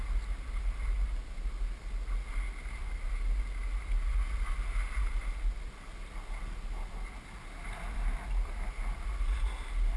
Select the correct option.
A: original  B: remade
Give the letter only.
A